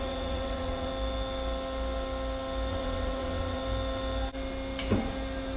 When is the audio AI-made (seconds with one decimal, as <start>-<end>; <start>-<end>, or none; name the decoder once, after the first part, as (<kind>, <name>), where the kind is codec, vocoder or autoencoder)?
0.0-0.9 (vocoder, WaveNeXt); 2.7-3.6